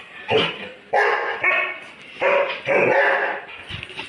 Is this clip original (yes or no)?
yes